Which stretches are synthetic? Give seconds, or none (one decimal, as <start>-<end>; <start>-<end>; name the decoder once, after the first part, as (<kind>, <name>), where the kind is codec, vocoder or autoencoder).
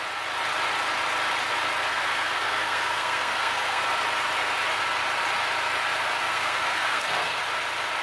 1.9-3.8 (codec, SNAC); 6.2-7.4